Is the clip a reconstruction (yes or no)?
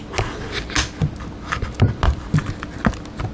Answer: no